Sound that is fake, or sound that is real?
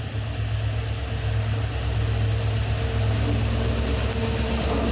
real